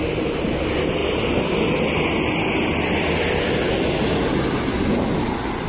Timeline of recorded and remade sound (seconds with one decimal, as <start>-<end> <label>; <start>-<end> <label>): 0.0-5.7 recorded